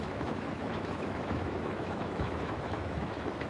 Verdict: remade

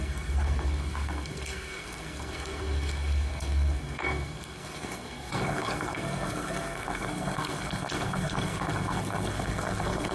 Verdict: remade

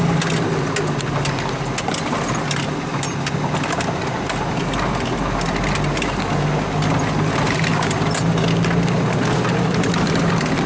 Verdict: recorded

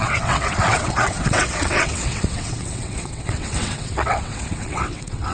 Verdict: remade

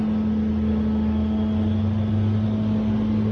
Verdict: recorded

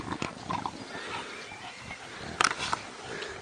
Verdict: recorded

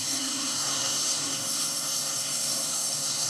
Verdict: remade